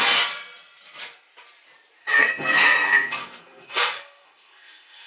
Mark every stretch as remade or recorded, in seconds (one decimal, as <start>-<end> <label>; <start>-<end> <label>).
0.0-2.0 recorded; 2.0-5.1 remade